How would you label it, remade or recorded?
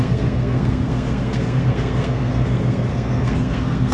remade